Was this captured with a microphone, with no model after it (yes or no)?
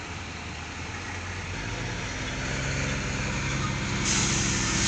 yes